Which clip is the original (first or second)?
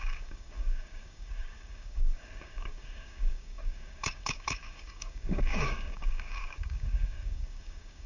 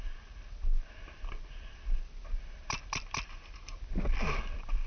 second